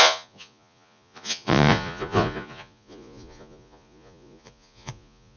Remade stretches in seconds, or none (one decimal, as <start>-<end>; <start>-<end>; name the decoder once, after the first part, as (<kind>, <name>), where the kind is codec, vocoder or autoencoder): 0.0-5.4 (vocoder, Vocos)